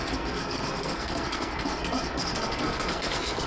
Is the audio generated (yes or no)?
yes